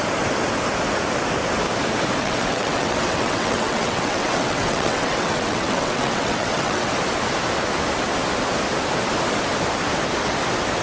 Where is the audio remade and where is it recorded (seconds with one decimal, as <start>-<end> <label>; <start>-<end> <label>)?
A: 0.0-2.2 recorded; 2.2-6.9 remade; 6.9-10.8 recorded